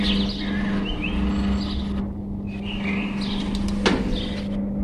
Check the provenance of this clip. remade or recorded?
recorded